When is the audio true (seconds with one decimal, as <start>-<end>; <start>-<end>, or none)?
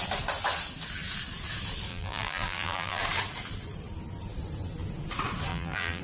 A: 0.0-1.9; 3.0-5.5